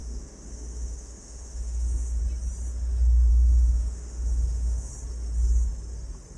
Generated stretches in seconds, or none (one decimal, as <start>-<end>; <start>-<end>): 0.0-2.2; 3.3-4.9